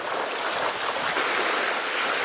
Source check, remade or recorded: remade